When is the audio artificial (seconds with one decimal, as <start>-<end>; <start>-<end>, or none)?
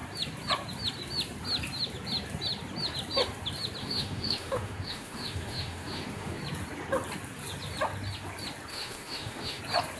3.8-6.4; 8.7-9.6